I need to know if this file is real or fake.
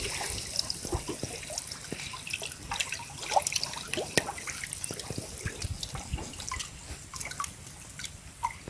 real